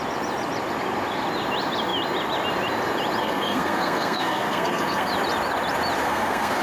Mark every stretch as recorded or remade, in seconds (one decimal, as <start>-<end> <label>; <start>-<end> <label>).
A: 0.0-3.2 recorded; 3.2-5.1 remade; 5.1-6.0 recorded; 6.0-6.6 remade